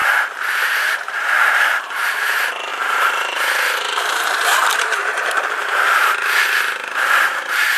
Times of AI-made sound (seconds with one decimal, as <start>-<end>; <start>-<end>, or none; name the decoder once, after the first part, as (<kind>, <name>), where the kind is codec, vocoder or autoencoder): 0.8-6.4 (vocoder, BigVGAN v2); 7.3-7.8

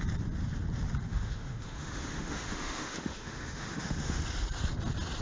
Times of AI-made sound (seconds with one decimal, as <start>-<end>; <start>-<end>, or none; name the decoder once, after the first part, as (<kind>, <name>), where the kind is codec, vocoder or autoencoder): 1.1-4.2 (autoencoder, DAC-VAE)

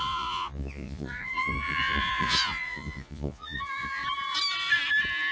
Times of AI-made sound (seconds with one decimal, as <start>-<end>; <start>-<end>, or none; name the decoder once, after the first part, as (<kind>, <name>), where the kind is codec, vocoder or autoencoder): 0.0-4.0 (vocoder, Vocos)